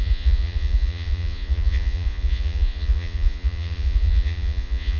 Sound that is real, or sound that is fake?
fake